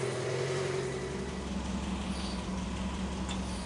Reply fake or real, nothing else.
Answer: real